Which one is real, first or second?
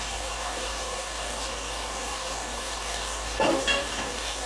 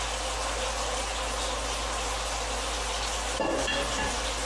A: second